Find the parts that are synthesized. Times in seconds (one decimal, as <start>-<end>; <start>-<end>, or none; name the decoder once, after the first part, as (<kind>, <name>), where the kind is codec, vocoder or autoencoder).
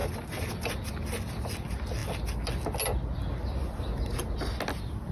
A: 0.0-0.7 (vocoder, BigVGAN v2)